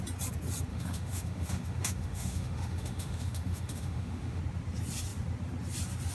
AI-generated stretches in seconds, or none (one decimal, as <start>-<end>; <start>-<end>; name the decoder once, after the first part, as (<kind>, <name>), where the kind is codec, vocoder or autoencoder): 0.7-4.4 (autoencoder, DAC-VAE)